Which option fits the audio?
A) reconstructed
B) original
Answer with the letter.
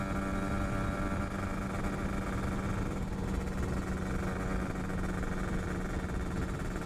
B